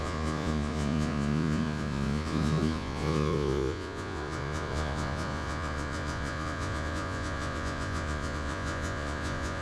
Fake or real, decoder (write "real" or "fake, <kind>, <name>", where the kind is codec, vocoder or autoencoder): fake, vocoder, Vocos